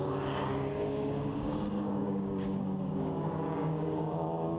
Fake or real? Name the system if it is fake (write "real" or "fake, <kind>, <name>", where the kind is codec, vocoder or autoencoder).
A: fake, codec, DAC